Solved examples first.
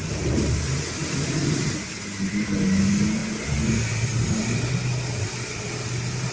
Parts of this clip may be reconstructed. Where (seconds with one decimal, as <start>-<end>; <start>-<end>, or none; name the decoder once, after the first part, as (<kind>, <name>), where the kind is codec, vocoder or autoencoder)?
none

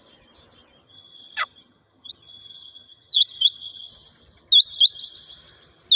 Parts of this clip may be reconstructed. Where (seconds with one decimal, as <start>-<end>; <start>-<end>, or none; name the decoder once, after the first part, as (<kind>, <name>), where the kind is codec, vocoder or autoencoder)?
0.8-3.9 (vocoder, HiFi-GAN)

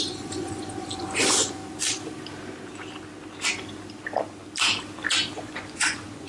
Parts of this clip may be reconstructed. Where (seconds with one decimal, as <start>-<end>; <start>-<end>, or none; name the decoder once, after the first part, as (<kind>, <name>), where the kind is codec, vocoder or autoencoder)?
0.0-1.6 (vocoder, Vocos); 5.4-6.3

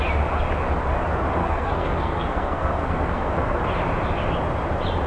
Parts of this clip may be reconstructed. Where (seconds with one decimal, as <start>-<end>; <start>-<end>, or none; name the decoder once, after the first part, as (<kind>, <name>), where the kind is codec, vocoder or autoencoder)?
1.4-3.6 (codec, SNAC)

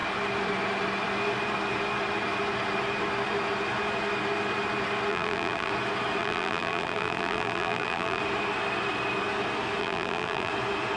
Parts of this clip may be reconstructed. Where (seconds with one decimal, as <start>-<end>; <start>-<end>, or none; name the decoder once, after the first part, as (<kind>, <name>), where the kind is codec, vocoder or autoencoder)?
5.1-5.7 (vocoder, BigVGAN v2); 6.2-8.2; 9.8-10.5